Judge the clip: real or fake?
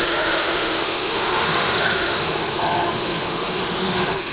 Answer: fake